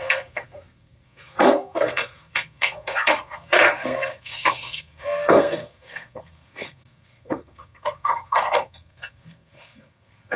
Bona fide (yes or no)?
no